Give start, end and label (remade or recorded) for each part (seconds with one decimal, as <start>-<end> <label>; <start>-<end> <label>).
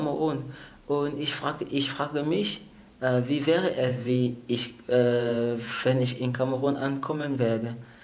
0.0-3.9 recorded; 3.9-7.4 remade; 7.4-8.0 recorded